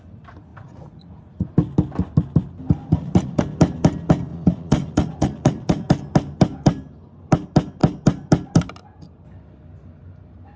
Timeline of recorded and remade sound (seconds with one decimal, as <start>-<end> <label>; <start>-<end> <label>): 0.0-0.5 recorded; 0.5-1.5 remade; 1.5-2.8 recorded; 2.8-3.4 remade; 3.4-4.3 recorded; 4.3-5.9 remade; 5.9-10.6 recorded